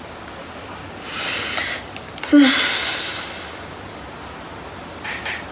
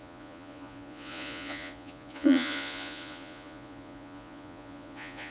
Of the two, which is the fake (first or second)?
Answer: second